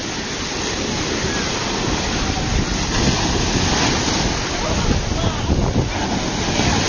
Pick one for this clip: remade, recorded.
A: recorded